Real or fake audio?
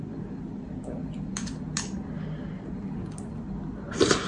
real